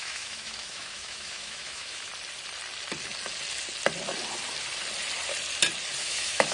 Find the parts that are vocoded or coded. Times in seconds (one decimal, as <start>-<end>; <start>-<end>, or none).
0.0-2.1; 6.0-6.5